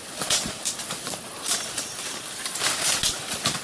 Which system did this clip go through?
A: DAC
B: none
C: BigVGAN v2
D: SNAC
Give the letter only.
B